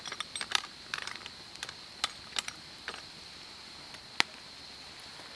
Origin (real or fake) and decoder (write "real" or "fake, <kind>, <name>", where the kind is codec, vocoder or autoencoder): real